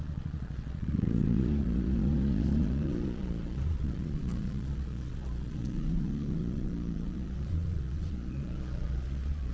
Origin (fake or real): fake